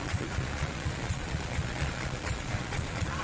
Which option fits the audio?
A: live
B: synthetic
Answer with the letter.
B